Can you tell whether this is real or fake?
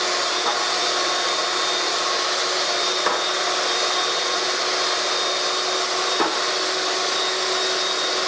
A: real